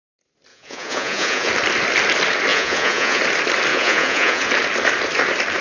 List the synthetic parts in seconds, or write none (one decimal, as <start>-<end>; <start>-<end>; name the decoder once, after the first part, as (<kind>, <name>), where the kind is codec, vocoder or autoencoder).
0.5-1.5 (vocoder, Vocos); 2.5-3.2; 3.7-4.5